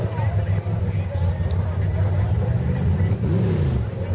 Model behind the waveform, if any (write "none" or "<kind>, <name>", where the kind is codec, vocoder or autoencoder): none